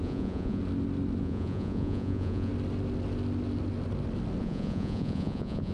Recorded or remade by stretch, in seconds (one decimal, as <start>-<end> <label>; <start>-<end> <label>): 0.0-0.6 remade; 0.6-1.2 recorded; 1.2-2.5 remade; 2.5-4.4 recorded; 4.4-5.7 remade